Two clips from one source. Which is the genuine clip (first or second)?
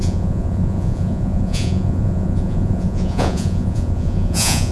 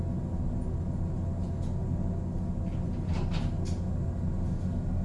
second